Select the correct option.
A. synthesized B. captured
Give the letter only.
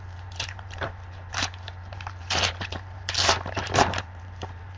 A